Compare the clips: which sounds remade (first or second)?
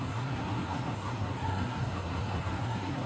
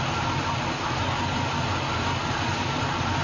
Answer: first